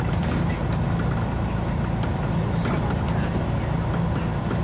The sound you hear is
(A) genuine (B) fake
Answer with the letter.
A